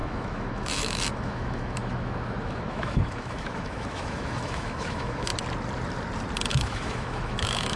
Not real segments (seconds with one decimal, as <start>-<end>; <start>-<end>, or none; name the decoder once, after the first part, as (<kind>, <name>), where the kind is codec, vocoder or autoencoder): 0.0-5.3 (autoencoder, DAC-VAE); 6.5-7.8